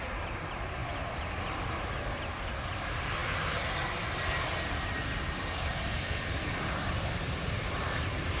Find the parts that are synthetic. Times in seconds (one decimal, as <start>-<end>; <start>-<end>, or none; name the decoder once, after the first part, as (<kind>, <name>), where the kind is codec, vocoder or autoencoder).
none